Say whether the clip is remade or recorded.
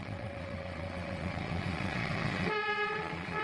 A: remade